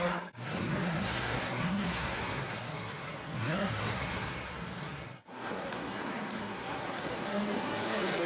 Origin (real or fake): fake